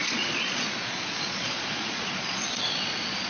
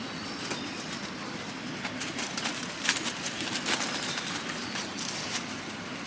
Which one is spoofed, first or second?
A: first